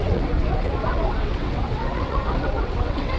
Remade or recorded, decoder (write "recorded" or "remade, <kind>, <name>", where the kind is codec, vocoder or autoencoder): remade, vocoder, WaveNeXt